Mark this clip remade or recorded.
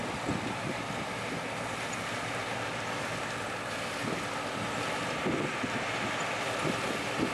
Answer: recorded